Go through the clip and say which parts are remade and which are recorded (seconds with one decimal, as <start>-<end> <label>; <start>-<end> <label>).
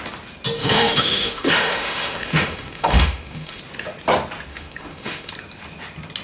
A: 0.0-0.6 recorded; 0.6-3.6 remade; 3.6-4.5 recorded; 4.5-5.3 remade; 5.3-6.2 recorded